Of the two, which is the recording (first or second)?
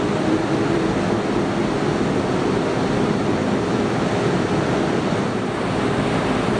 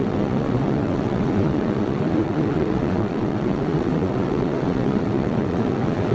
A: first